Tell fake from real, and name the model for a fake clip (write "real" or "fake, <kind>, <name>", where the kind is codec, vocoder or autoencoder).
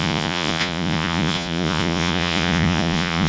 fake, vocoder, Vocos